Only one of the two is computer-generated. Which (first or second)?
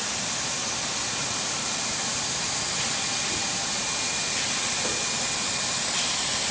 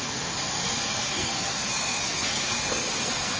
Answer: second